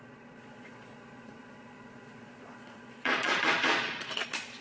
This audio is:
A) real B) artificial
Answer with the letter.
B